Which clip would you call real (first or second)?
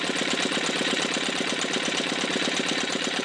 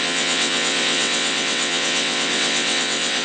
first